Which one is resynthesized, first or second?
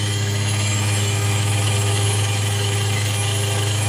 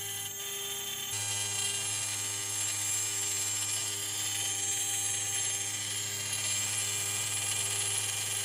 first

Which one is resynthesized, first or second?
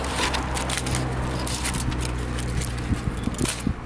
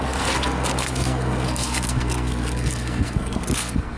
second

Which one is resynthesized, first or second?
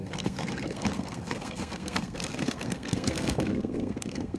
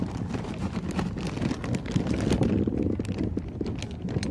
first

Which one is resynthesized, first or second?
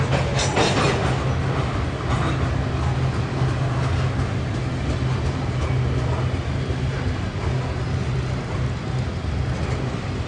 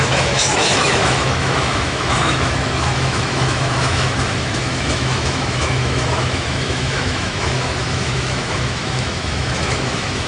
second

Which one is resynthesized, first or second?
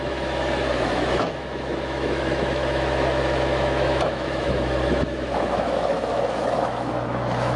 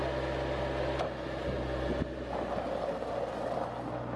first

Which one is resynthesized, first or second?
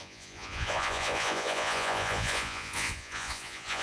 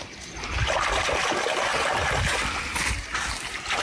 first